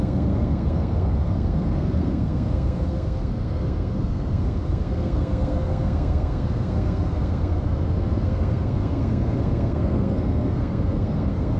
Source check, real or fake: fake